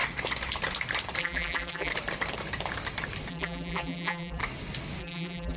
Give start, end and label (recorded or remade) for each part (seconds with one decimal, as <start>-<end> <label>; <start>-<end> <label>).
0.0-1.2 recorded; 1.2-1.9 remade; 1.9-3.3 recorded; 3.3-4.4 remade; 4.4-5.0 recorded; 5.0-5.6 remade